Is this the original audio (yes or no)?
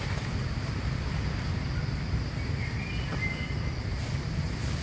yes